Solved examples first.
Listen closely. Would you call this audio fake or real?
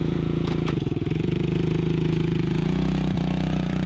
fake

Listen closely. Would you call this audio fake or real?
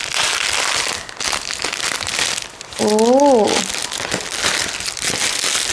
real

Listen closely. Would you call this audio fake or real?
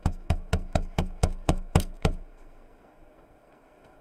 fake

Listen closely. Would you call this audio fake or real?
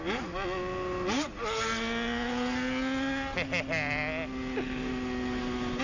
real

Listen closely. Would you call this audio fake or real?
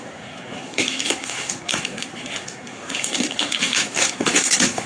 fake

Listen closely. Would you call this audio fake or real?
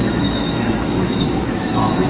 fake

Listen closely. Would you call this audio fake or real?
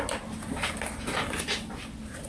real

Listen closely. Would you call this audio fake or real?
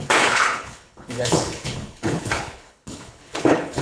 fake